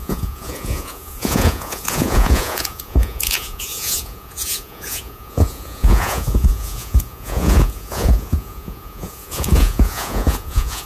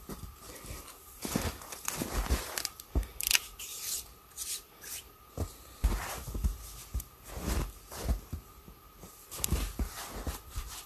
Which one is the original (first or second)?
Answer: second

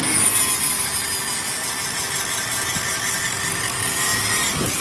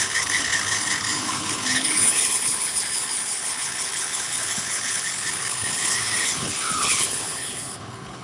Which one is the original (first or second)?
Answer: first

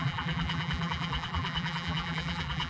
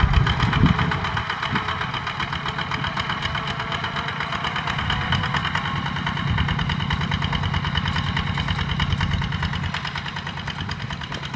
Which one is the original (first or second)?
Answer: second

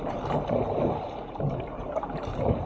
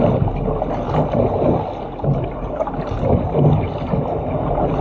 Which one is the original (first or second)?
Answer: second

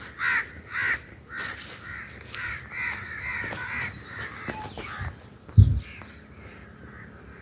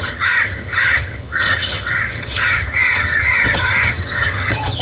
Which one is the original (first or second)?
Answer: first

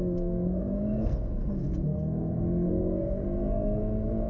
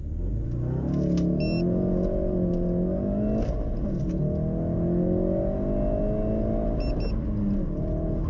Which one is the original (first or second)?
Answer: second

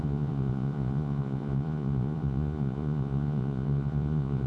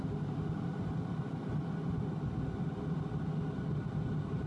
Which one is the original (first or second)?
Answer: second